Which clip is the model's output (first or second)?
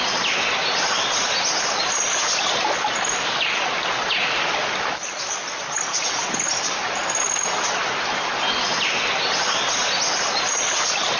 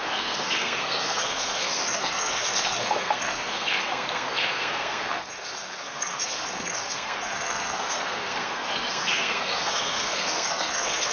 second